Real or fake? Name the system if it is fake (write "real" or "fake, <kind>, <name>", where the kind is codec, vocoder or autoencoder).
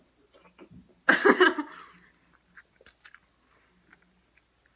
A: real